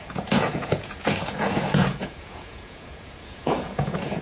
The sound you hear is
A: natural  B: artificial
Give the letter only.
B